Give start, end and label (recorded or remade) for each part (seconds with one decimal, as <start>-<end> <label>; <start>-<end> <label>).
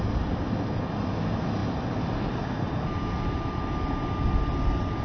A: 0.0-5.0 recorded